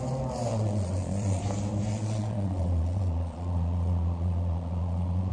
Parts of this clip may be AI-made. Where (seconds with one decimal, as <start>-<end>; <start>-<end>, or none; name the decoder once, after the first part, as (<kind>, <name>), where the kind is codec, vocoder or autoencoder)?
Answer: 0.5-1.4 (vocoder, Vocos); 1.9-5.3